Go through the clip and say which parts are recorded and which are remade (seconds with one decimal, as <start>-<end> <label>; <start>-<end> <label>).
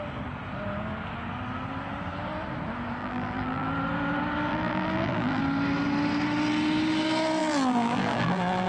0.0-3.0 recorded; 3.0-3.7 remade; 3.7-4.5 recorded; 4.5-5.4 remade; 5.4-7.4 recorded; 7.4-8.7 remade